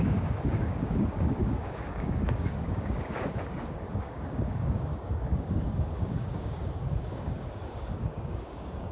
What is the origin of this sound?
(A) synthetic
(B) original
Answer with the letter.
A